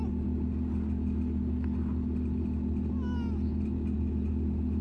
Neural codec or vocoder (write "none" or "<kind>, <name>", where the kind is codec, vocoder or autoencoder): none